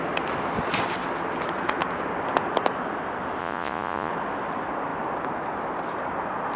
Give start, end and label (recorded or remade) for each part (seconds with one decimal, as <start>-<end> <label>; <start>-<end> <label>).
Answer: 0.0-3.4 recorded; 3.4-4.1 remade; 4.1-6.6 recorded